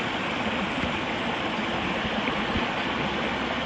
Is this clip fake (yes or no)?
no